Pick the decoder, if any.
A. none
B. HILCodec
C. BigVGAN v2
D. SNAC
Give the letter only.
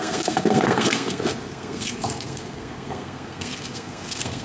D